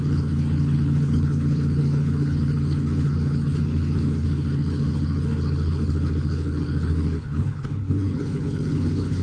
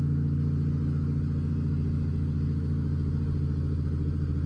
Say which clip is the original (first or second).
second